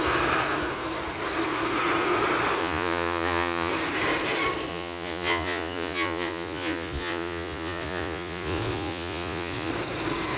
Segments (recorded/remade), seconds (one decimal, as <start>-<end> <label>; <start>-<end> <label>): 0.0-2.6 recorded; 2.6-3.7 remade; 3.7-4.7 recorded; 4.7-9.7 remade; 9.7-10.4 recorded